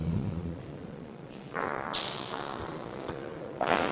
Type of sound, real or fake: fake